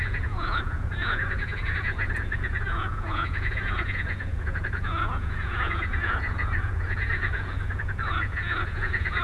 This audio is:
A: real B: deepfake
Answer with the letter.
B